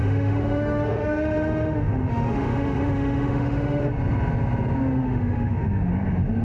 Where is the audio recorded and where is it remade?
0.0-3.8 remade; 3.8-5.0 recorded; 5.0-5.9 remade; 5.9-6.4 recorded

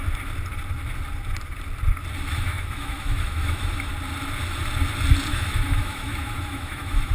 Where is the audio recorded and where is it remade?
0.0-2.3 recorded; 2.3-3.9 remade; 3.9-5.3 recorded; 5.3-7.1 remade